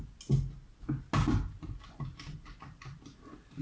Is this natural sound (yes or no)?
yes